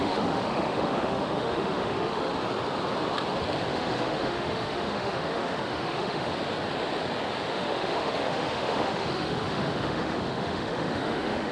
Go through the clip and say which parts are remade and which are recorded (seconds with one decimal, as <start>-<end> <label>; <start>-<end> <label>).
0.0-2.3 remade; 2.3-3.7 recorded; 3.7-6.3 remade; 6.3-7.5 recorded; 7.5-11.5 remade